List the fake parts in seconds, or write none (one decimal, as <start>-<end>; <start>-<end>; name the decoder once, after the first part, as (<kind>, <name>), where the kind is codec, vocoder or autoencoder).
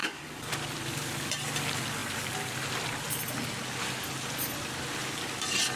0.0-0.5 (codec, DAC)